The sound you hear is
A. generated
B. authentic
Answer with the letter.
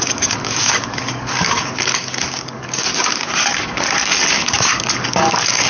A